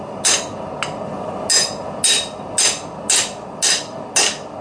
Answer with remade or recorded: recorded